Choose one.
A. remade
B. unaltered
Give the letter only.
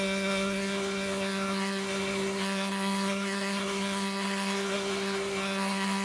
A